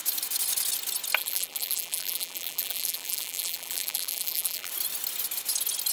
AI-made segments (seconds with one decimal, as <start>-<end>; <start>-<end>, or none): 1.2-4.7